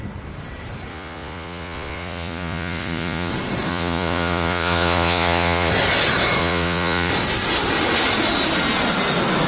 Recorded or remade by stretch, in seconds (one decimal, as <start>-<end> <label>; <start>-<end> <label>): 0.0-0.9 recorded; 0.9-3.3 remade; 3.3-3.7 recorded; 3.7-5.7 remade; 5.7-6.4 recorded; 6.4-7.1 remade; 7.1-9.5 recorded